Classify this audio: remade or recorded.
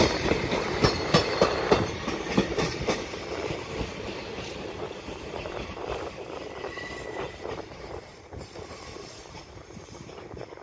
remade